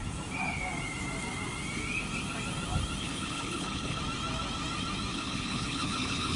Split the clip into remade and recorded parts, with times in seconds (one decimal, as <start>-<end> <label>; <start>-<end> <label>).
0.0-3.0 recorded; 3.0-4.0 remade; 4.0-5.1 recorded; 5.1-6.4 remade